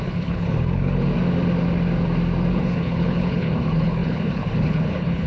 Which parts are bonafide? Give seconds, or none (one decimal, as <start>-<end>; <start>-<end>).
1.1-2.5